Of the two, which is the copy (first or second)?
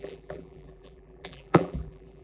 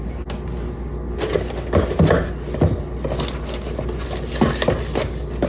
first